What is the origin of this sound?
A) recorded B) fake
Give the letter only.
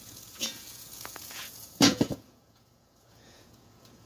B